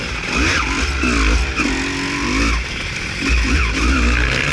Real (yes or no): yes